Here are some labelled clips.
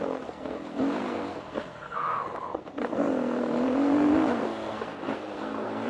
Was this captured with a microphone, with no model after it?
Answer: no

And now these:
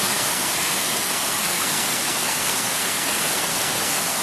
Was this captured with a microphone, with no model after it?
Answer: no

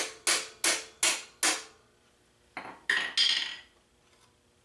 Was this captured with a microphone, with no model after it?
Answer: yes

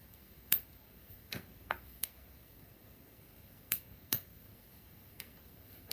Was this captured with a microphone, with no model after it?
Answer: no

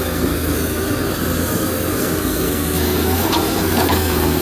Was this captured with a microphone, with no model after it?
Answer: no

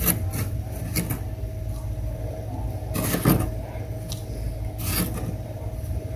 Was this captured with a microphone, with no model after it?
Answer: yes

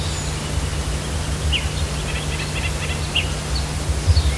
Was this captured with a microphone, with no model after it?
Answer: yes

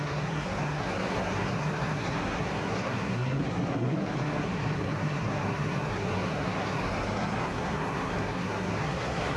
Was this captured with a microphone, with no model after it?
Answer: no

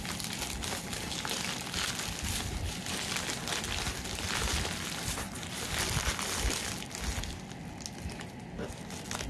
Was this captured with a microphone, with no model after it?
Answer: yes